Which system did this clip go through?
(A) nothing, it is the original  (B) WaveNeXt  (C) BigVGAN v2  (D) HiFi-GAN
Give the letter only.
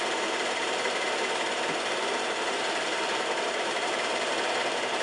C